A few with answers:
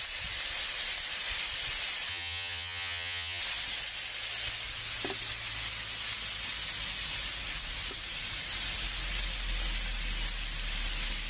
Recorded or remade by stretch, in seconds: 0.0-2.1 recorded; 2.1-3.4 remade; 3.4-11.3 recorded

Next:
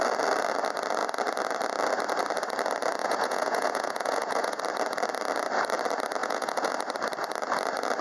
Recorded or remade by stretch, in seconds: 0.0-3.0 recorded; 3.0-4.6 remade; 4.6-6.2 recorded; 6.2-6.7 remade; 6.7-8.0 recorded

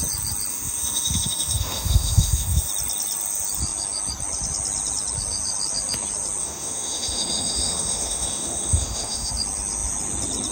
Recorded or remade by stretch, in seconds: 0.0-0.5 recorded; 0.5-2.7 remade; 2.7-6.4 recorded; 6.4-9.3 remade; 9.3-10.5 recorded

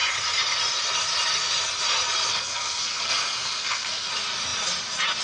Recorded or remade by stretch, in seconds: 0.0-2.3 recorded; 2.3-4.1 remade; 4.1-5.2 recorded

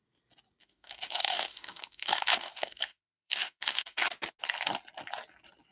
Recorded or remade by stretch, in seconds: 0.0-0.6 recorded; 0.6-4.0 remade; 4.0-5.7 recorded